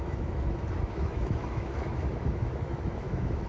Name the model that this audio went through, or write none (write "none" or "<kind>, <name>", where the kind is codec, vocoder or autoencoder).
autoencoder, DAC-VAE